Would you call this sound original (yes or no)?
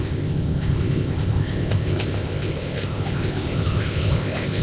no